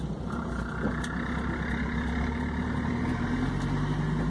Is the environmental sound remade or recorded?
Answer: recorded